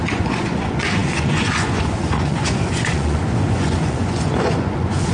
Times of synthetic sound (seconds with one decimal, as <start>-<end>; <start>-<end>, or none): 0.0-5.1